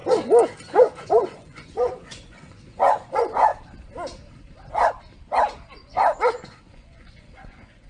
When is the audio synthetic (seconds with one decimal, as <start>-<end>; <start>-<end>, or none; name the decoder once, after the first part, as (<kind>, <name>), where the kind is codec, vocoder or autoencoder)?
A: 0.7-3.5 (vocoder, Vocos); 6.6-7.9